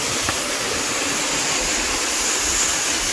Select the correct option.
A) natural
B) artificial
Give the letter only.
A